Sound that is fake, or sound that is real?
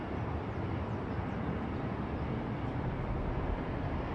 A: fake